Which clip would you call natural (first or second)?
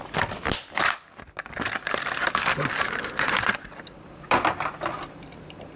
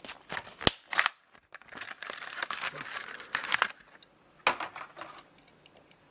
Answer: second